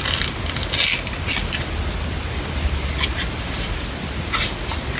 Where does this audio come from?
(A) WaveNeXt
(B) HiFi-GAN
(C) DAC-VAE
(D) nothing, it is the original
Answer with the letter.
D